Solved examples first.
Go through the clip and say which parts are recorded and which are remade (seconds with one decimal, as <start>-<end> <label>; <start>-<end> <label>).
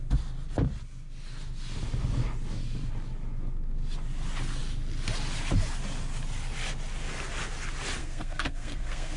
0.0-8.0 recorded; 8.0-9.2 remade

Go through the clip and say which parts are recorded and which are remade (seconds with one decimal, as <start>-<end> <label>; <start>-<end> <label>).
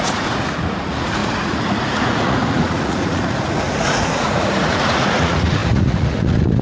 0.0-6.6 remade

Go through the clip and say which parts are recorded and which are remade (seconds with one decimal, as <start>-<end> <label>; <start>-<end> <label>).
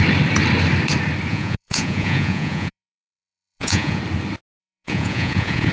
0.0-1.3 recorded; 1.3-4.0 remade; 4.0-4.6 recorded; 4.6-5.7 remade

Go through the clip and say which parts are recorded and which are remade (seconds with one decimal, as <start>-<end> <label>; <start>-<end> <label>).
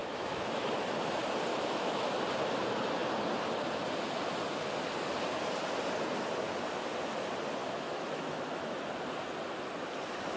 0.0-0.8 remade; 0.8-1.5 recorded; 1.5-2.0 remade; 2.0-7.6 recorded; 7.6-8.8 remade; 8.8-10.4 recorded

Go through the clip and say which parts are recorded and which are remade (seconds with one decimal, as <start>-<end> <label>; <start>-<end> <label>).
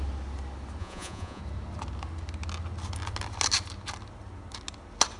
0.0-0.8 recorded; 0.8-1.4 remade; 1.4-5.2 recorded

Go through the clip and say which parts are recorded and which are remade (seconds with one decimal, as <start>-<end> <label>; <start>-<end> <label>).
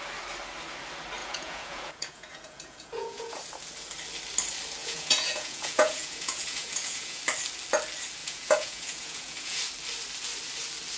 0.0-1.2 recorded; 1.2-3.4 remade; 3.4-4.8 recorded; 4.8-7.2 remade; 7.2-8.2 recorded; 8.2-9.6 remade; 9.6-11.0 recorded